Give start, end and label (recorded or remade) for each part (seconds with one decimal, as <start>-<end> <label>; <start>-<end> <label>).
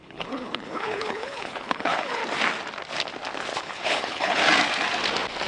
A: 0.0-2.2 remade; 2.2-3.6 recorded; 3.6-4.4 remade; 4.4-5.5 recorded